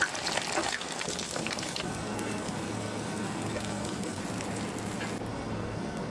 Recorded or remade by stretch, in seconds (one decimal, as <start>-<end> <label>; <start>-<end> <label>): 0.0-0.6 recorded; 0.6-4.2 remade; 4.2-5.3 recorded; 5.3-6.1 remade